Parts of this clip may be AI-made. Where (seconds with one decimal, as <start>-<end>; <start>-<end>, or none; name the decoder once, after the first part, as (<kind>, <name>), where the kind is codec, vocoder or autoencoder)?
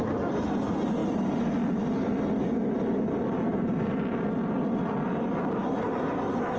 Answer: 0.0-1.0 (vocoder, BigVGAN v2); 2.9-6.6